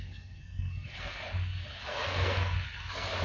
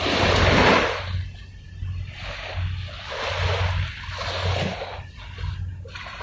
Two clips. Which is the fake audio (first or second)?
first